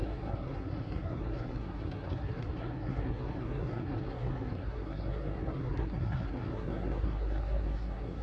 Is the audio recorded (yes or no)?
no